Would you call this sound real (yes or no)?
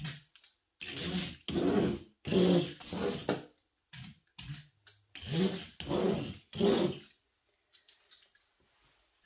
yes